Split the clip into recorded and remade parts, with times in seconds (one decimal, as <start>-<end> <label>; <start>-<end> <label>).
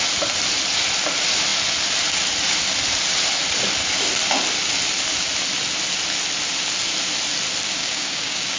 0.0-7.8 recorded; 7.8-8.6 remade